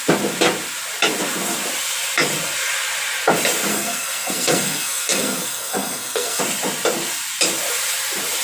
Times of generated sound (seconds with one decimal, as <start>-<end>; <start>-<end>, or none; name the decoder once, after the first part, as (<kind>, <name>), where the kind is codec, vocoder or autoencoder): 3.7-6.4 (codec, SNAC)